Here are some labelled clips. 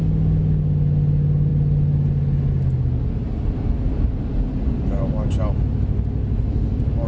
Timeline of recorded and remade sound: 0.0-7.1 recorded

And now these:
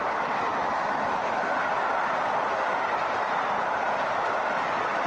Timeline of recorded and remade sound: 0.0-5.1 recorded

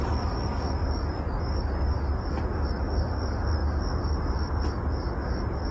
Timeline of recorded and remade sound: 0.0-5.7 recorded

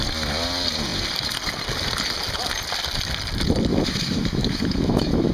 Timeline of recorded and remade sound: 0.0-3.7 recorded; 3.7-5.3 remade